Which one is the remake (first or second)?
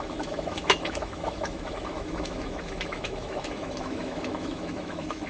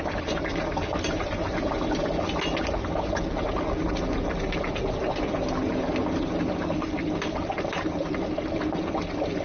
first